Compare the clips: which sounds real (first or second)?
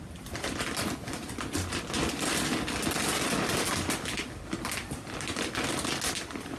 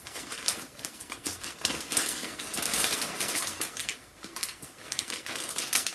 first